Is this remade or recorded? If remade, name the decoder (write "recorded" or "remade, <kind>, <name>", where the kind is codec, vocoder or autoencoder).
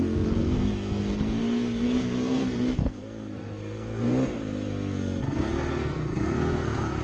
remade, codec, SNAC